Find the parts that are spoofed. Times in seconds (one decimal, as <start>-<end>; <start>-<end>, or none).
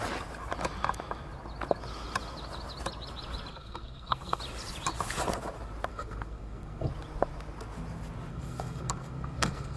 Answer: 3.5-4.4; 5.9-6.9; 8.3-9.8